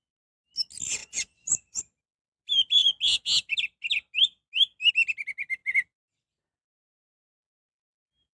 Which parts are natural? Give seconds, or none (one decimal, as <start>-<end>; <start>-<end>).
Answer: 0.0-1.0; 1.8-8.4